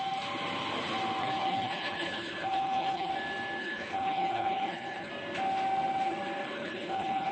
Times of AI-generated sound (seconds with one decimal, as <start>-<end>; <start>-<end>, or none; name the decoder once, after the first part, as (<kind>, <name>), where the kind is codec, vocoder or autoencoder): 1.2-3.1 (codec, HILCodec); 3.6-5.1; 6.4-7.3